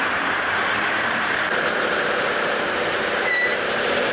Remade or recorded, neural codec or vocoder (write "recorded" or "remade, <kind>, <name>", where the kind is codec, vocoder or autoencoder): remade, vocoder, BigVGAN v2